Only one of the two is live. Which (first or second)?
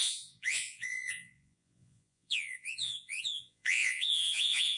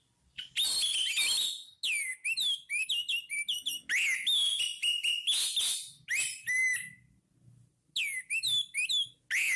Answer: second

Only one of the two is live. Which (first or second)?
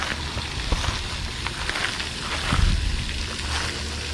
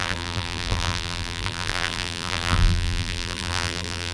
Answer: first